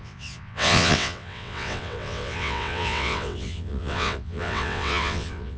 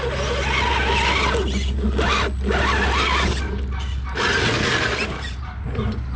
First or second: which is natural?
second